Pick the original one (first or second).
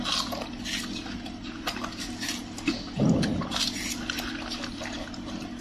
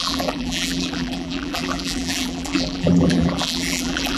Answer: first